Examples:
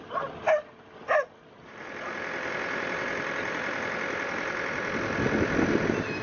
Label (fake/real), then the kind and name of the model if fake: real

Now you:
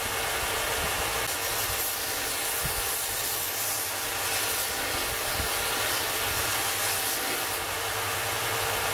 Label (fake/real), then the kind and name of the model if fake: real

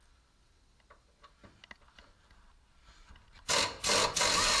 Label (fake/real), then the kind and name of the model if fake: real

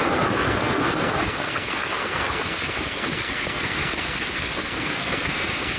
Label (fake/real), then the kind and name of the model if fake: fake, codec, SNAC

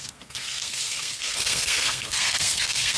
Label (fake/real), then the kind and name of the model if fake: fake, codec, SNAC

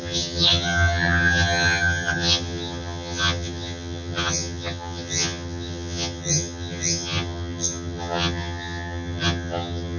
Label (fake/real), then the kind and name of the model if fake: fake, vocoder, HiFi-GAN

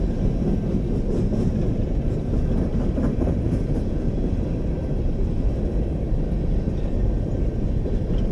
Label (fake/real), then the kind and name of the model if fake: real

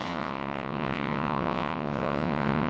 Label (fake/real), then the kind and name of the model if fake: fake, vocoder, WaveNeXt